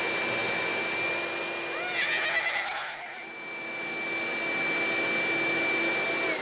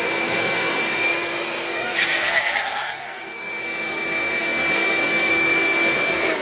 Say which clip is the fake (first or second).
second